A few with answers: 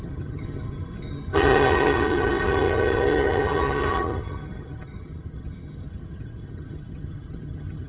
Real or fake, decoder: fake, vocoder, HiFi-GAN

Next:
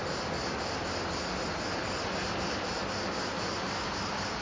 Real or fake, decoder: real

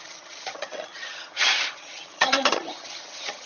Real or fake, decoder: fake, vocoder, HiFi-GAN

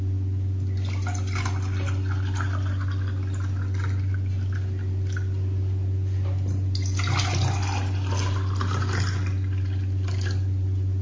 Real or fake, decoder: real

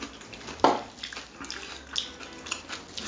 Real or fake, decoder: real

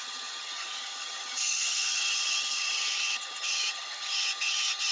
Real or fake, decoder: fake, vocoder, HiFi-GAN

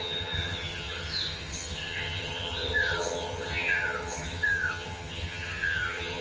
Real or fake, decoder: fake, vocoder, HiFi-GAN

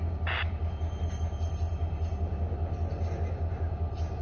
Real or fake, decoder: real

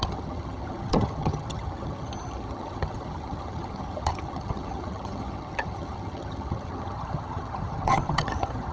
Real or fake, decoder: fake, vocoder, HiFi-GAN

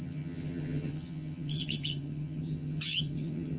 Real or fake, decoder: fake, vocoder, HiFi-GAN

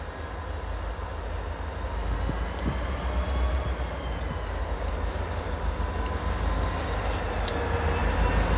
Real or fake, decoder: real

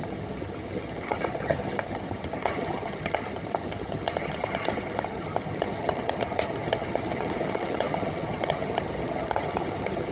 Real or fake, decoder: fake, vocoder, HiFi-GAN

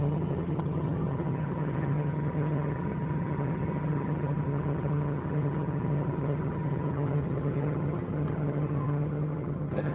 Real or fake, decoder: fake, vocoder, HiFi-GAN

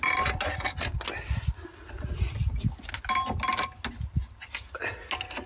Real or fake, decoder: real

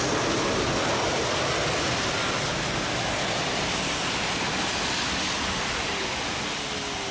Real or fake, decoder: real